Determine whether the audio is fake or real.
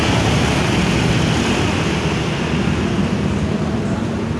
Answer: real